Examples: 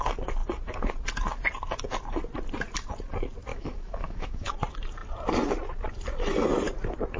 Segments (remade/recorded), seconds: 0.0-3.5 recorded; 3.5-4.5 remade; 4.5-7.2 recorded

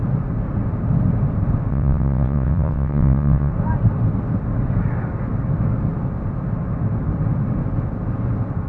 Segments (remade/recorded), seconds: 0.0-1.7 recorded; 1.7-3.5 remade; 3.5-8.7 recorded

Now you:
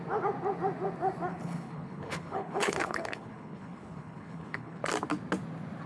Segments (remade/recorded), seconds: 0.0-1.3 recorded; 1.3-4.8 remade; 4.8-5.9 recorded